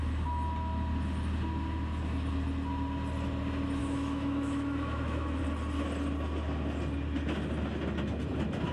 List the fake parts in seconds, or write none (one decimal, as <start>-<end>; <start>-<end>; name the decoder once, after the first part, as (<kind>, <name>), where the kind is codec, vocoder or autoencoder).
3.8-5.4 (autoencoder, DAC-VAE)